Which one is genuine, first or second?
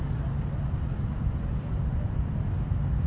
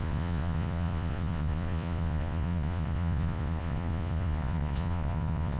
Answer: first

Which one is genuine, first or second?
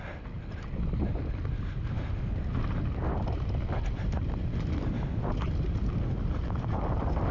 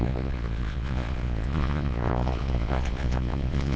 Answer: first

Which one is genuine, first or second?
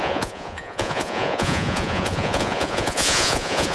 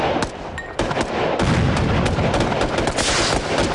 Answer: second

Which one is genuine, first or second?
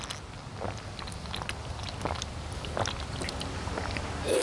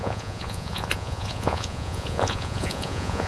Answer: first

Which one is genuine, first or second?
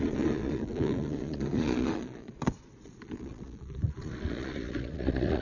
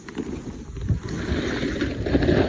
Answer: second